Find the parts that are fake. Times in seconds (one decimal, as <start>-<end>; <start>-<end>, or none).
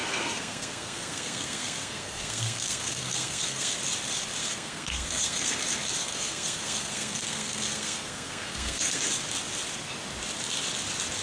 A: 0.0-3.8; 4.4-5.6; 6.0-9.0